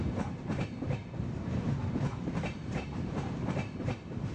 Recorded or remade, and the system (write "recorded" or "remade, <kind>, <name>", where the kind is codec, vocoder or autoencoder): remade, vocoder, BigVGAN v2